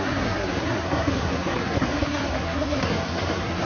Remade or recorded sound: remade